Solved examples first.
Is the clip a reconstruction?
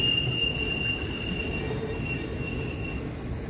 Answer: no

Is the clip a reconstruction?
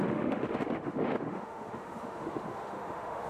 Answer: yes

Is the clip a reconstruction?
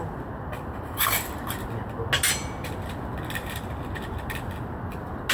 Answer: no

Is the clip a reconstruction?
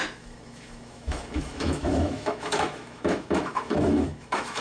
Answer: yes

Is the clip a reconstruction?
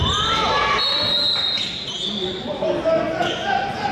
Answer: no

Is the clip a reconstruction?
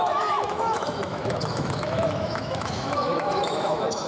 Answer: yes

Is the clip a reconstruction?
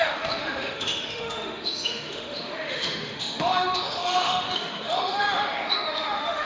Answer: yes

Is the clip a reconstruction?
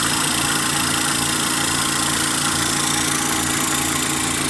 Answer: no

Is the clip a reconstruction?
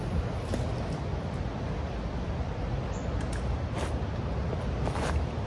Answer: no